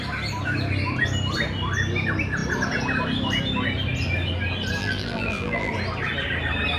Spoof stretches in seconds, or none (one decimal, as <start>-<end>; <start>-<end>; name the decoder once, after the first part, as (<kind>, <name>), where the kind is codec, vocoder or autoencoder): 4.8-5.7 (vocoder, BigVGAN v2)